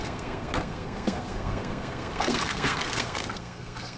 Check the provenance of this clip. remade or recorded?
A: remade